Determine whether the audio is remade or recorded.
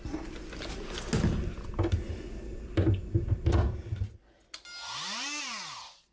recorded